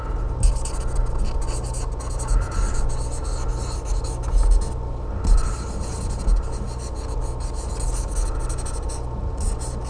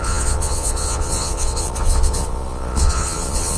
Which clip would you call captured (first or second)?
first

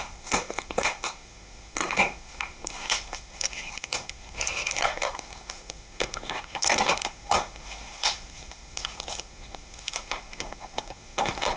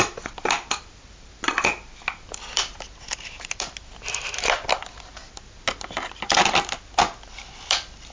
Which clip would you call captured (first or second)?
second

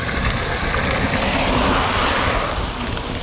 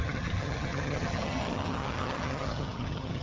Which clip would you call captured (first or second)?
first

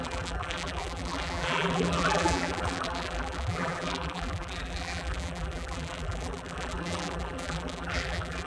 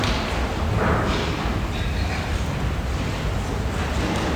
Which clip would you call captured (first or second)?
second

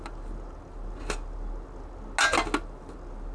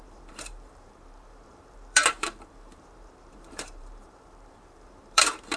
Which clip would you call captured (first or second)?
first